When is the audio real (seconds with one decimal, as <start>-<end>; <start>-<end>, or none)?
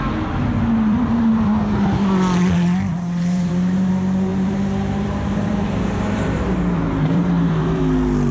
0.0-2.9; 3.9-4.3; 7.8-8.3